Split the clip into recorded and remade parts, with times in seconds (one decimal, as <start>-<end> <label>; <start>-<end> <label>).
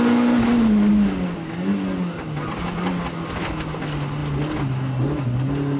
0.0-5.8 recorded